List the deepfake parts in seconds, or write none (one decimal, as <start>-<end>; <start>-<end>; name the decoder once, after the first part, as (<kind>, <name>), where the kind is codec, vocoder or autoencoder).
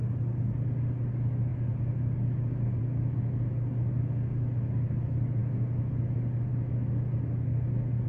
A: none